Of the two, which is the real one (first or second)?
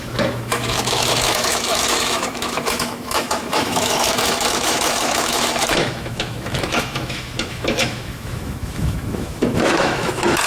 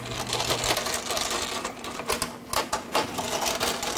second